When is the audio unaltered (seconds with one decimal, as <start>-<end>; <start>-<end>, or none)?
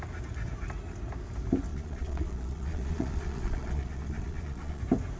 0.0-1.7; 4.8-5.2